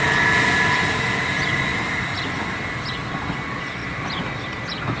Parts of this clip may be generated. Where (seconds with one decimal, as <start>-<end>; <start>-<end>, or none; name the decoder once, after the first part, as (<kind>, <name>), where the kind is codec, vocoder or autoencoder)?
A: none